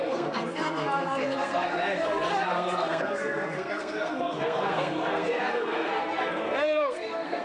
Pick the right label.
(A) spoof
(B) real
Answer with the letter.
A